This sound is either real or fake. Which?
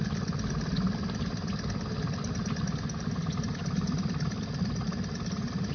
real